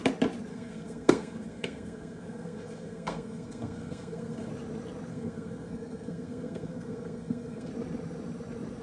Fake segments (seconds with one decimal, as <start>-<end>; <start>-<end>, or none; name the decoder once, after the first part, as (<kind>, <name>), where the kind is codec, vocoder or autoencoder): 0.5-4.5 (codec, SNAC); 5.1-7.7